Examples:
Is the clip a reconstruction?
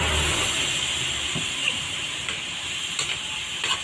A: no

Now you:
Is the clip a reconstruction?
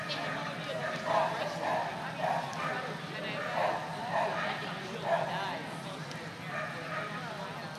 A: no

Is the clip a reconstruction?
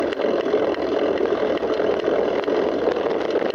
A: no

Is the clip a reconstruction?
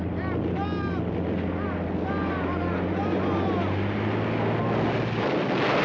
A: no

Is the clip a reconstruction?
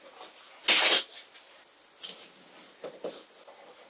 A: no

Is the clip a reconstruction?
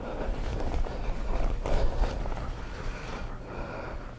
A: no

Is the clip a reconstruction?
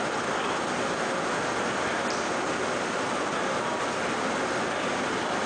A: no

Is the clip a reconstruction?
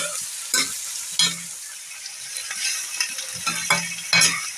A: no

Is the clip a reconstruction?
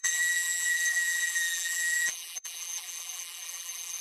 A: yes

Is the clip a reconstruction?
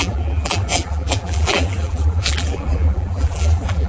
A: yes